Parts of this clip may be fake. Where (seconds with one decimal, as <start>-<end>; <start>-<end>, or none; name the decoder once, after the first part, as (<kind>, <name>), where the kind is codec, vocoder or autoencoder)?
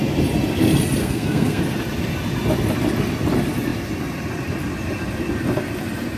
1.0-1.6 (codec, SNAC)